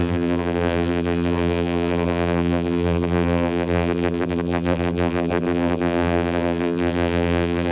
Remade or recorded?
remade